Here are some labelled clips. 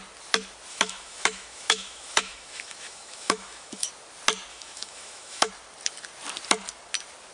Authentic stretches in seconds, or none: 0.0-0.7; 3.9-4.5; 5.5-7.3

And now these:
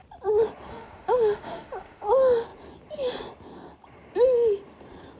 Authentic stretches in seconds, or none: 0.0-0.7; 2.1-5.2